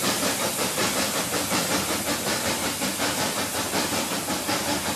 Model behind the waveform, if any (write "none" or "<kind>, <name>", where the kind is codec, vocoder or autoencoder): none